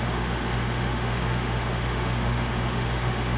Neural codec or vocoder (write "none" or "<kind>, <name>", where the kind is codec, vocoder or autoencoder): autoencoder, DAC-VAE